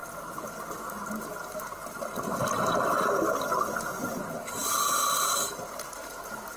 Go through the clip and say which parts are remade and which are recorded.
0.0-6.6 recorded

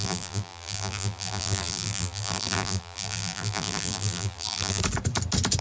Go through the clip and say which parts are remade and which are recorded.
0.0-4.8 remade; 4.8-5.6 recorded

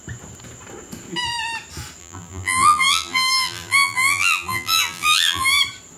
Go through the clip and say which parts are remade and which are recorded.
0.0-2.0 recorded; 2.0-5.6 remade; 5.6-6.0 recorded

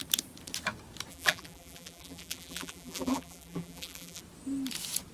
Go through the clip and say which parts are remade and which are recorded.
0.0-1.1 recorded; 1.1-4.2 remade; 4.2-5.1 recorded